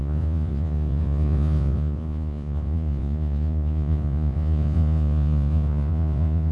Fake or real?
fake